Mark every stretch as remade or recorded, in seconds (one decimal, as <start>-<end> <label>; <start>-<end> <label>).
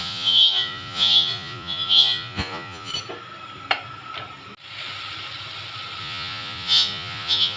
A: 0.0-2.9 remade; 2.9-6.0 recorded; 6.0-7.6 remade